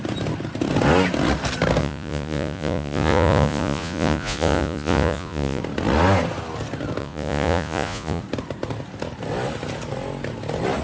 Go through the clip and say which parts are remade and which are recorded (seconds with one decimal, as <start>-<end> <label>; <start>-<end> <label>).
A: 0.0-1.8 recorded; 1.8-5.6 remade; 5.6-7.0 recorded; 7.0-8.2 remade; 8.2-10.8 recorded